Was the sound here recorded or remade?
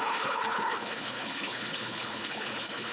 remade